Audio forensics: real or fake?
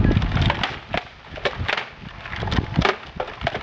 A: real